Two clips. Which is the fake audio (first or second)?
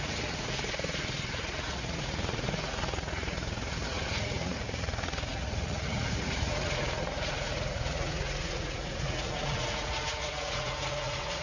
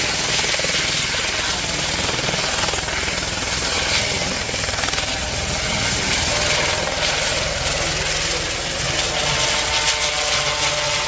first